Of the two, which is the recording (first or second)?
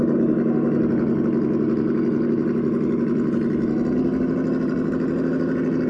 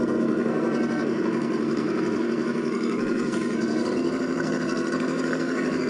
first